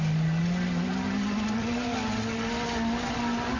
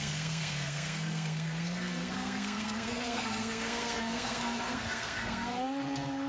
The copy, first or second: second